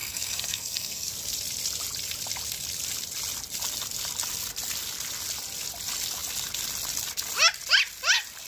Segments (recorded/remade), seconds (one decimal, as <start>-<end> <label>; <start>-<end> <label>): 0.0-1.1 remade; 1.1-8.5 recorded